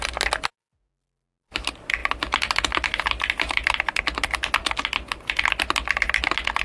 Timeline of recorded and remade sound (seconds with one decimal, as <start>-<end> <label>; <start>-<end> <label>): 0.0-6.6 recorded